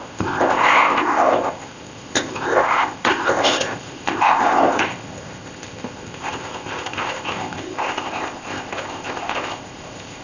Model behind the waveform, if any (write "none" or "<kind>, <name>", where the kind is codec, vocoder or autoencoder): codec, ZipCodec